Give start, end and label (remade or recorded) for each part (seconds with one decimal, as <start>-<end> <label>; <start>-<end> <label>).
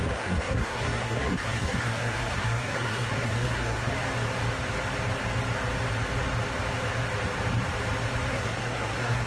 0.0-3.9 remade; 3.9-8.3 recorded; 8.3-9.3 remade